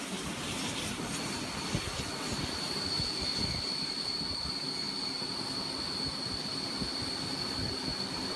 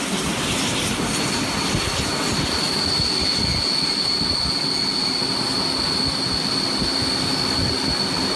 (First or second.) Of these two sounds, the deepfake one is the first